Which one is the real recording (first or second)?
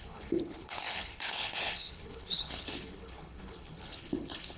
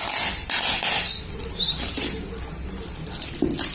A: second